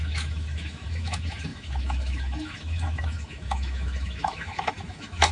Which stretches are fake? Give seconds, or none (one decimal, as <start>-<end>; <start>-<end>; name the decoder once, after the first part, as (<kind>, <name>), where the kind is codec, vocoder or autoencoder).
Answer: 0.0-5.3 (autoencoder, DAC-VAE)